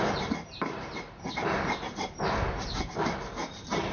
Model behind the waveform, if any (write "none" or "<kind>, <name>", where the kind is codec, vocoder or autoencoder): none